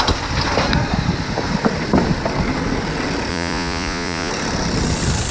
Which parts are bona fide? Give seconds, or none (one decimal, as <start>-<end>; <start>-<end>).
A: 0.0-3.3; 4.3-5.3